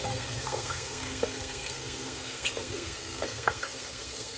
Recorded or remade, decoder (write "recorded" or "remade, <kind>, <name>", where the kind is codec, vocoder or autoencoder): remade, codec, SNAC